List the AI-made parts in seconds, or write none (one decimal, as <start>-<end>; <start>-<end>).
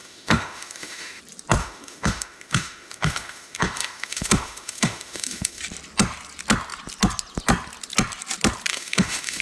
0.0-1.2; 1.6-5.6; 8.7-9.4